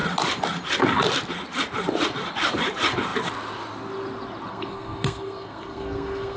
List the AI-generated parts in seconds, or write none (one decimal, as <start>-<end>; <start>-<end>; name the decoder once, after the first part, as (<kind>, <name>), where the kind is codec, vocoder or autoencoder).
4.5-6.4 (codec, SNAC)

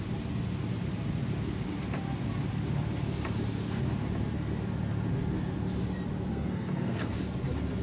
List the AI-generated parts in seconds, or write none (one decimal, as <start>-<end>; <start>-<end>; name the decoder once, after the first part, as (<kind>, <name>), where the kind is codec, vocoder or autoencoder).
6.3-7.1 (codec, SNAC)

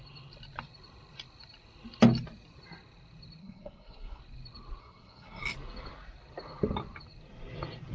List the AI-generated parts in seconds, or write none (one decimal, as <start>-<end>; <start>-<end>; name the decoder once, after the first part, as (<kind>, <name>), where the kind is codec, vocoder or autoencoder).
3.4-4.2 (codec, SNAC); 4.8-5.4

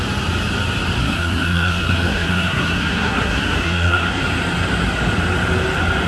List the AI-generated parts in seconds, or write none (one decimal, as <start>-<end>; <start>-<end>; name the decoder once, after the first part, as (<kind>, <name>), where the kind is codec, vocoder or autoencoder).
1.0-4.2 (codec, SNAC)

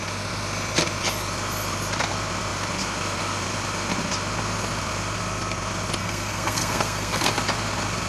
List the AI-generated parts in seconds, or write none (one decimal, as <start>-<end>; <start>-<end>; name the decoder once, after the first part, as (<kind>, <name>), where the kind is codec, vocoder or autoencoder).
6.0-7.3 (codec, SNAC)